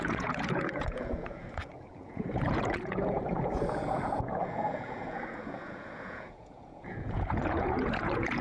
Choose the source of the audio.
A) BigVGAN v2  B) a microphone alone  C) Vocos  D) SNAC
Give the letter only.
C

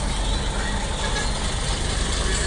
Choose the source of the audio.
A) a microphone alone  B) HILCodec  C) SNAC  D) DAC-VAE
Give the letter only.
A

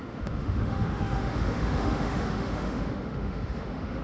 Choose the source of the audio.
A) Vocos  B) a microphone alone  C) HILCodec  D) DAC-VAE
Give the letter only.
D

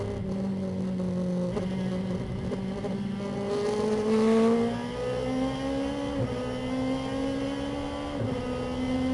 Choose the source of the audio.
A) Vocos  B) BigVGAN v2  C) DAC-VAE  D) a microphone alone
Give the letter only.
D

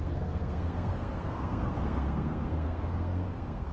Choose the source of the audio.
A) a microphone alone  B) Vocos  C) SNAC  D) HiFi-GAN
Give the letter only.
C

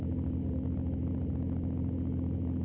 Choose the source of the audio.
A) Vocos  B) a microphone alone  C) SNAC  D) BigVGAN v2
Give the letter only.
B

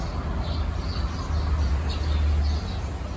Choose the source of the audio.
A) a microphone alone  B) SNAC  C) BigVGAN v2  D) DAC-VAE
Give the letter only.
A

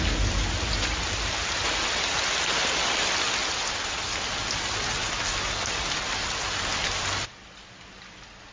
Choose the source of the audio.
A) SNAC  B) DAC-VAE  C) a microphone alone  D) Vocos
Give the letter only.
C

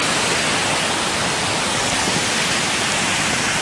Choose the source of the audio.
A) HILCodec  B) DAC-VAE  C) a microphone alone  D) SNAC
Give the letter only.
C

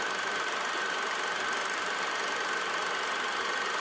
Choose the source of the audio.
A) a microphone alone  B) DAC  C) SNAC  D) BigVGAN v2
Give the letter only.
D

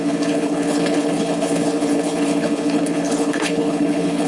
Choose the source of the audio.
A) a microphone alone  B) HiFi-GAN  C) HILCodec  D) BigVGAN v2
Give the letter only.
C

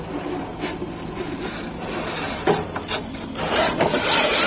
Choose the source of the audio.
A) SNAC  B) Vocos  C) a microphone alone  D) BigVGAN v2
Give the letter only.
C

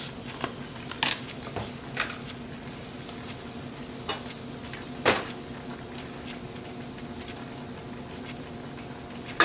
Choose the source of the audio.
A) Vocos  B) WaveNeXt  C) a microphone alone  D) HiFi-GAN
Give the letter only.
C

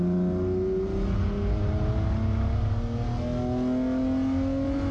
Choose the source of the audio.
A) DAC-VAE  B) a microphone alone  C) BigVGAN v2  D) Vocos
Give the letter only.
B